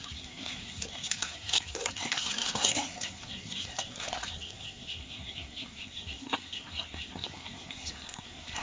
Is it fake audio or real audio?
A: fake